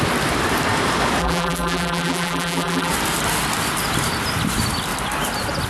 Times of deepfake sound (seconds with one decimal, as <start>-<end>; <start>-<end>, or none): 1.2-2.9